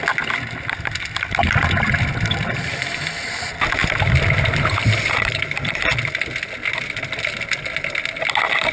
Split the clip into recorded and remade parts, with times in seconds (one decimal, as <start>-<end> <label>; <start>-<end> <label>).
0.0-3.8 recorded; 3.8-6.4 remade; 6.4-8.7 recorded